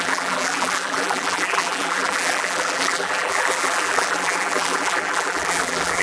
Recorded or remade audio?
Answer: remade